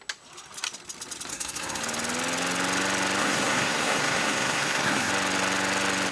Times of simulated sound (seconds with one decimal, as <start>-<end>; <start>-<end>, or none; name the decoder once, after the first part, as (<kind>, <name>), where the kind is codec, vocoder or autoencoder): 1.3-1.8 (codec, SNAC); 3.2-5.1